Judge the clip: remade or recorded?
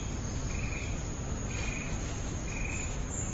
recorded